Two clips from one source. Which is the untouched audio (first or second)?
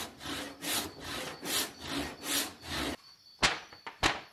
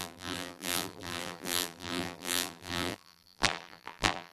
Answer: first